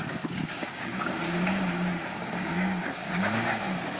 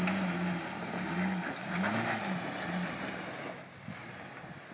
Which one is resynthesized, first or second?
first